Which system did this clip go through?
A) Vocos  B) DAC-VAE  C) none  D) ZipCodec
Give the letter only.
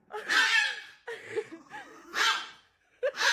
C